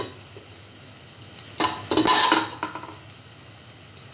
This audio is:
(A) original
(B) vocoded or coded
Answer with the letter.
A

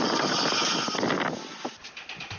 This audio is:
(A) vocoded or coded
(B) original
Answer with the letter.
B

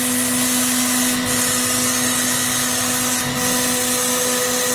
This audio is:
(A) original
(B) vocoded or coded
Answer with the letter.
A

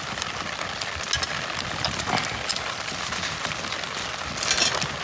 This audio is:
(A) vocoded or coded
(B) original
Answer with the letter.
B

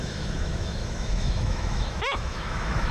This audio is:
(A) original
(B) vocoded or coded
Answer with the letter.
B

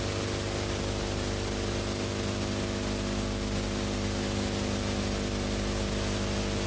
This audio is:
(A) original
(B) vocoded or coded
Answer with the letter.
A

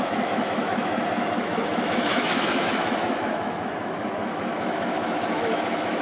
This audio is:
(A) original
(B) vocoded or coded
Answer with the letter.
B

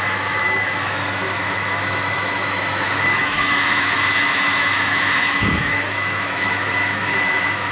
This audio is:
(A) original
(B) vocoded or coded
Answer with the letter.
B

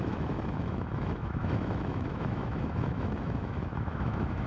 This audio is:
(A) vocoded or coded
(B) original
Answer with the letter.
A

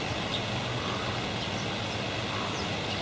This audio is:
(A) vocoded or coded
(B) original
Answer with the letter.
B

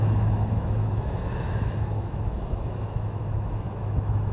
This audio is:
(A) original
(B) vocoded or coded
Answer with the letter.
B